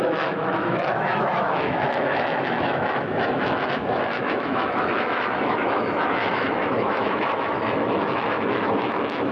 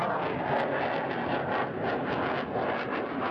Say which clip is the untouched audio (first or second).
second